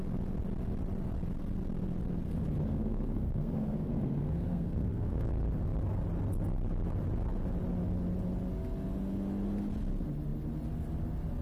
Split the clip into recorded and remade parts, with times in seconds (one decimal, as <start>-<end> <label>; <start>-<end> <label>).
0.0-2.7 recorded; 2.7-5.3 remade; 5.3-11.4 recorded